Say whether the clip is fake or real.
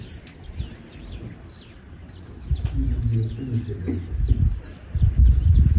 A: real